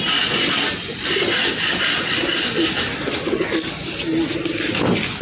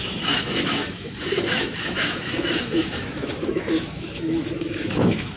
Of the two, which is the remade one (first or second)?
second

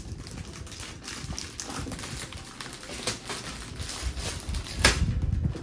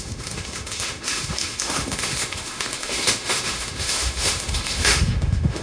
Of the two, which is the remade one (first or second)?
second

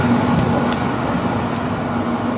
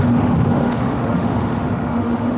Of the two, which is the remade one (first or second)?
second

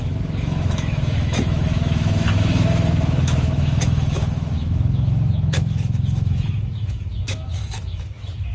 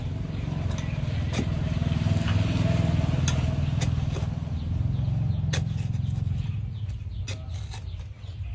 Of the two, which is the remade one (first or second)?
first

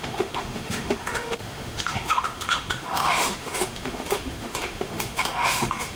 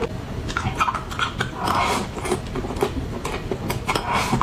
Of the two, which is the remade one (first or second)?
first